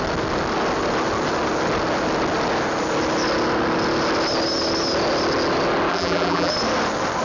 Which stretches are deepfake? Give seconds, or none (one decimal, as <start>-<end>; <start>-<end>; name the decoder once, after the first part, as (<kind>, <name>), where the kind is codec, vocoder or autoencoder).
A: 5.9-6.5 (vocoder, BigVGAN v2)